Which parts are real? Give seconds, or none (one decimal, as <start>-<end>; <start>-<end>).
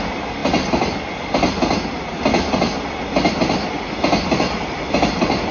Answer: 0.0-5.5